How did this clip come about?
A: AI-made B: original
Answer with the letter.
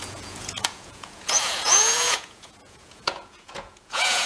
A